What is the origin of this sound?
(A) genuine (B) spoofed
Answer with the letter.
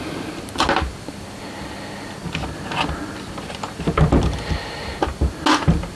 A